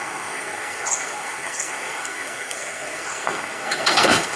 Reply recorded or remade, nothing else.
remade